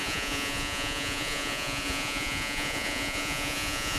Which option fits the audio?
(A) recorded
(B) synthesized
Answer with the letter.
B